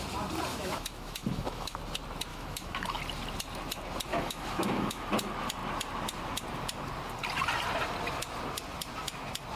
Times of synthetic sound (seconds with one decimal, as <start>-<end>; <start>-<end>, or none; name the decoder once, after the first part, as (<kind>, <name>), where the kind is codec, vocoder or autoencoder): 0.5-1.8 (autoencoder, DAC-VAE); 2.3-3.0; 4.1-5.1